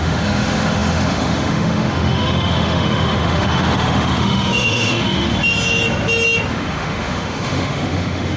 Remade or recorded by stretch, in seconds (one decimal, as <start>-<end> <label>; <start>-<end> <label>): 0.0-5.3 remade; 5.3-6.5 recorded; 6.5-8.4 remade